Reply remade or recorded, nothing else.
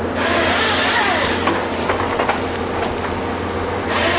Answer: recorded